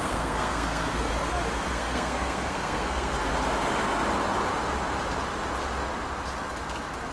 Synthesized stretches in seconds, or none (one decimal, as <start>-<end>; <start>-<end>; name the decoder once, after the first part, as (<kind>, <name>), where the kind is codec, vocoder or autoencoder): 0.0-1.1 (codec, SNAC); 1.7-3.1